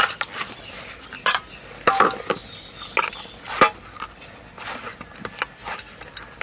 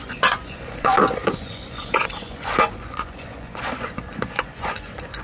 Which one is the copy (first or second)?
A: second